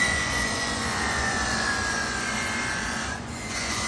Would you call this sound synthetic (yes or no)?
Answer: yes